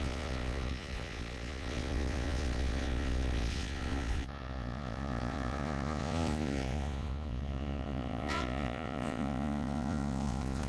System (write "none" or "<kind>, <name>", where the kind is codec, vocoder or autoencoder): vocoder, Vocos